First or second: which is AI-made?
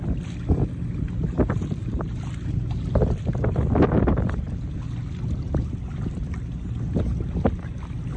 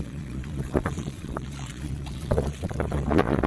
second